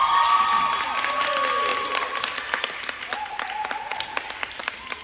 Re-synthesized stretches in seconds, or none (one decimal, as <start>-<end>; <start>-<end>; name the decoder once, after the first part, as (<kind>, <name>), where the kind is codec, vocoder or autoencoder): 1.7-2.2 (vocoder, BigVGAN v2); 3.9-4.6